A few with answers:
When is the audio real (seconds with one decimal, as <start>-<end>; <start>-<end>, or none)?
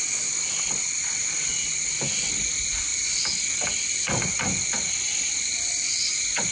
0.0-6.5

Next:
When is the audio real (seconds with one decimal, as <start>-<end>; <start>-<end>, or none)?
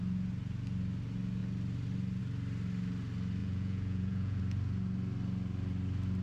0.0-3.4; 4.4-6.2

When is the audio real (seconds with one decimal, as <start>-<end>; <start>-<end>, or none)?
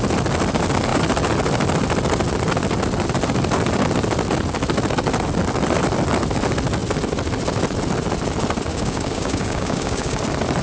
0.0-8.7; 10.2-10.6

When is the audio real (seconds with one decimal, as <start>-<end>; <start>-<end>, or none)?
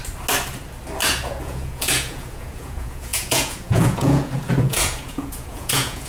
0.0-1.1